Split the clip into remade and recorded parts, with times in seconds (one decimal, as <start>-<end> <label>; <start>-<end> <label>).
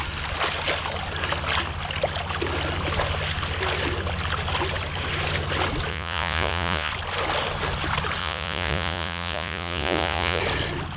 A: 0.0-5.9 recorded; 5.9-6.9 remade; 6.9-8.2 recorded; 8.2-10.4 remade; 10.4-11.0 recorded